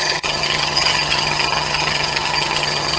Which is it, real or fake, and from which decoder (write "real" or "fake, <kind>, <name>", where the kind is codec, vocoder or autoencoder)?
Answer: fake, vocoder, HiFi-GAN